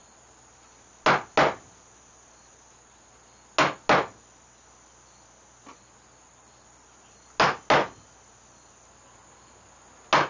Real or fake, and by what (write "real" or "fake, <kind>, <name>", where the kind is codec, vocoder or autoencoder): real